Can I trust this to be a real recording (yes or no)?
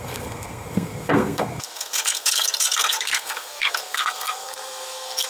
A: no